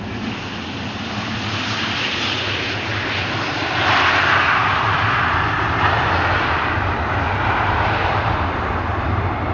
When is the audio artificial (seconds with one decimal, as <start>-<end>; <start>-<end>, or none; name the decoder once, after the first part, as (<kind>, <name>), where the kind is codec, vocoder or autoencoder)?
none